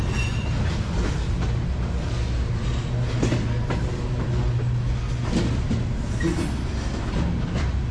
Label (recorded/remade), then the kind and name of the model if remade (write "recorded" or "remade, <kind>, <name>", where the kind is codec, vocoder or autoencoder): recorded